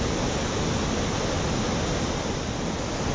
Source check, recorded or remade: recorded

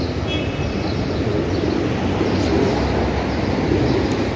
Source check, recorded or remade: recorded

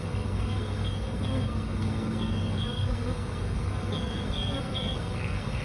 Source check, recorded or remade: remade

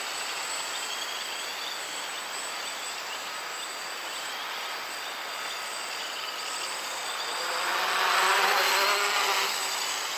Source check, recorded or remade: recorded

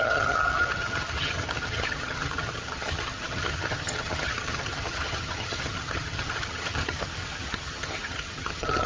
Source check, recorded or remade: remade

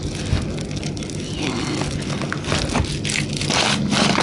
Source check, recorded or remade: recorded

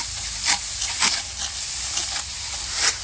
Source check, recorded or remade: recorded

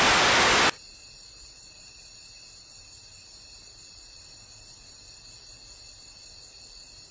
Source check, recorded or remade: recorded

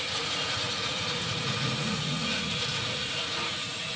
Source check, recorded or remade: remade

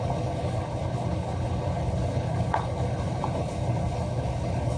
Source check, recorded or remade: remade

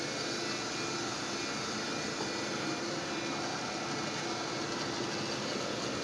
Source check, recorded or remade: recorded